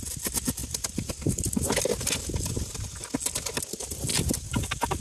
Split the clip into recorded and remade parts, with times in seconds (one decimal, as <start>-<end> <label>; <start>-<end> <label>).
0.0-5.0 recorded